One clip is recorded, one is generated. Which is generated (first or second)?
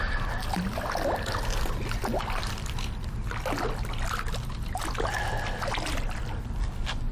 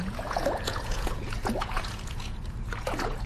second